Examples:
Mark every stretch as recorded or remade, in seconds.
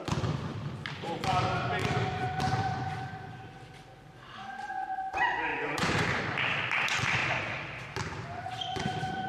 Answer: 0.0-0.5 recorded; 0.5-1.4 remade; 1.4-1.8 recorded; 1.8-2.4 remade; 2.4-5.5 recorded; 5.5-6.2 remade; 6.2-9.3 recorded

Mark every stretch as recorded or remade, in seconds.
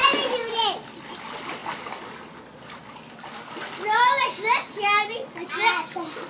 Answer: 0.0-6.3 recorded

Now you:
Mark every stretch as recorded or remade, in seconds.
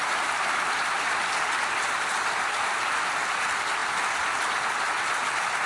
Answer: 0.0-5.7 recorded